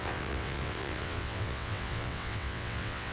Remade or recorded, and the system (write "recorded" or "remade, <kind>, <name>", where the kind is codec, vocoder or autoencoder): remade, vocoder, WaveNeXt